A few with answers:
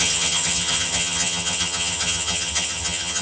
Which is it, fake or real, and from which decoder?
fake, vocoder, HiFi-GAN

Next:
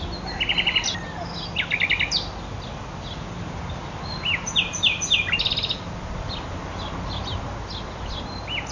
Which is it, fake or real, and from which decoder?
real